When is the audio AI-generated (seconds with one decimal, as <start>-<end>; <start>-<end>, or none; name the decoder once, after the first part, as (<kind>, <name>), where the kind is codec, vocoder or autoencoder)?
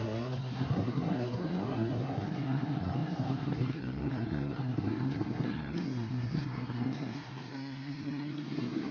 0.0-8.9 (codec, SNAC)